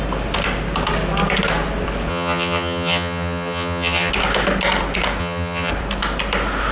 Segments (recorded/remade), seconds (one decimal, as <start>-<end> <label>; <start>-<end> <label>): 0.0-2.1 recorded; 2.1-4.1 remade; 4.1-5.2 recorded; 5.2-5.7 remade; 5.7-6.7 recorded